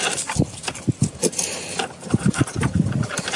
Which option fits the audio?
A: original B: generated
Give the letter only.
A